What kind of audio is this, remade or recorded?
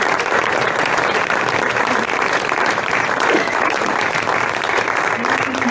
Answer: remade